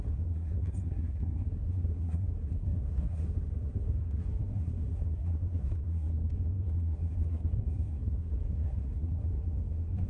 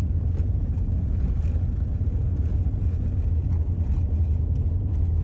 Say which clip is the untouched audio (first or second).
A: second